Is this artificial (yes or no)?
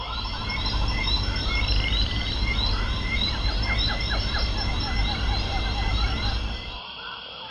yes